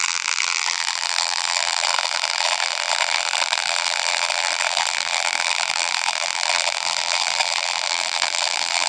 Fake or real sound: fake